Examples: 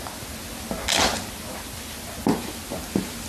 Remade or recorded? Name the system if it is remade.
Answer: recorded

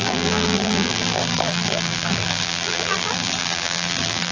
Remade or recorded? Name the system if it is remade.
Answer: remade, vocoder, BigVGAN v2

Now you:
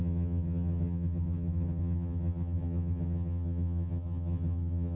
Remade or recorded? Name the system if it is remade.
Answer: remade, vocoder, HiFi-GAN